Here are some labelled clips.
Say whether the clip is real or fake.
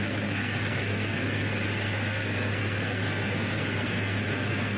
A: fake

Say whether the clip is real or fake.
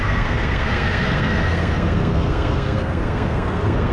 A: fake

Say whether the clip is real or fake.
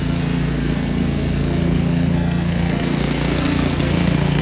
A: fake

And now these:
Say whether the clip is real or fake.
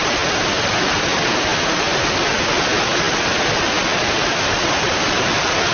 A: real